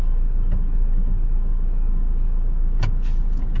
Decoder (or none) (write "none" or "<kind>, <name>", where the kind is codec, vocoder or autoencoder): none